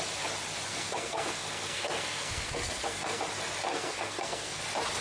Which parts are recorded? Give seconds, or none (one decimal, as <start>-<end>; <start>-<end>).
0.0-0.7; 3.2-3.7; 4.6-5.0